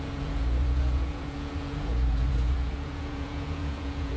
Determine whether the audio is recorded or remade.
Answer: remade